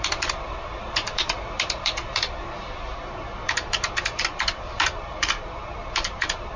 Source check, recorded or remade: remade